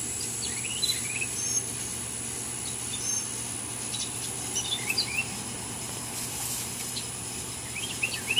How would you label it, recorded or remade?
recorded